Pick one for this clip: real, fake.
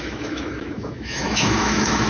fake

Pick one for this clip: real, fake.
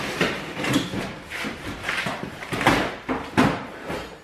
fake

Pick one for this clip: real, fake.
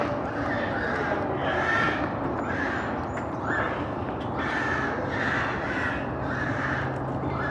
real